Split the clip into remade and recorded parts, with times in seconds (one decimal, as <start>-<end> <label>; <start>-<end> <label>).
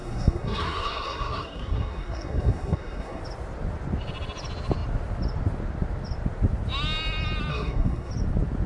0.0-3.2 remade; 3.2-7.5 recorded; 7.5-8.1 remade; 8.1-8.7 recorded